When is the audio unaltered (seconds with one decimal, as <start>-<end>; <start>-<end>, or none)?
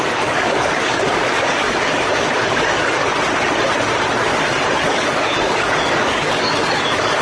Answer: 3.0-4.8